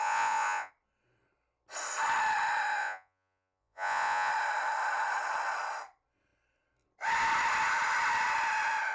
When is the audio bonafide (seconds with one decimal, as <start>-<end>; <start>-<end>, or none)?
0.7-2.8; 4.3-8.9